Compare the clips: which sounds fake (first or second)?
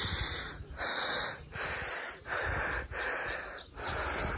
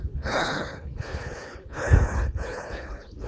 second